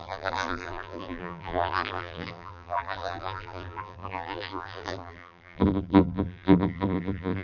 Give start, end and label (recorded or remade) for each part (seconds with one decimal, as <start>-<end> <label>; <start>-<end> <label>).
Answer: 0.0-7.4 remade